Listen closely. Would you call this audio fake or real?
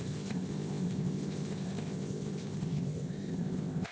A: fake